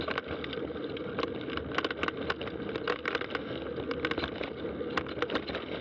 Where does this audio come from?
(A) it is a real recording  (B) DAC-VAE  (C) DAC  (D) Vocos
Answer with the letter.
A